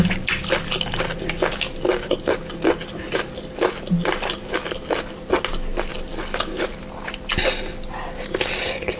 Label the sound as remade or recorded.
recorded